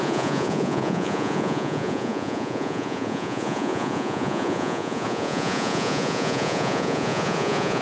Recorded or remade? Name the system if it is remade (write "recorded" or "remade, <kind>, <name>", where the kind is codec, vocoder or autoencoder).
remade, vocoder, Vocos